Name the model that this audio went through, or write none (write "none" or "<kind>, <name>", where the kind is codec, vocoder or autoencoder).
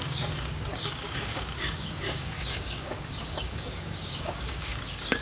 codec, DAC